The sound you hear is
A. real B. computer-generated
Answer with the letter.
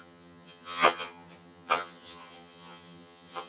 B